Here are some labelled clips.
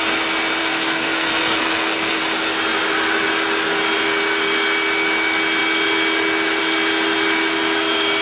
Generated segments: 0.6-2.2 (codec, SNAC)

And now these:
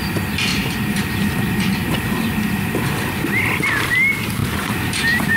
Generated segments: 0.5-1.3 (vocoder, BigVGAN v2); 4.4-5.4

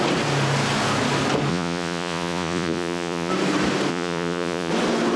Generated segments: 1.5-3.3 (vocoder, Vocos); 3.9-4.7

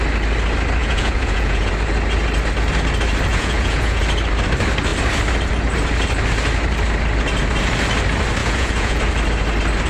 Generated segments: 0.8-1.7 (vocoder, Vocos); 3.3-4.0; 8.4-9.0

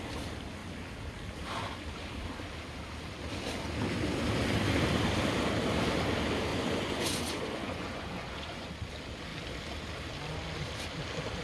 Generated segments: 6.5-8.7 (vocoder, Vocos)

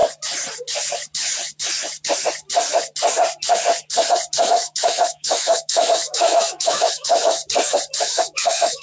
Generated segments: 4.4-7.4 (autoencoder, DAC-VAE); 8.0-8.8